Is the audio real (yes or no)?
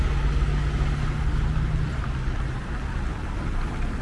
yes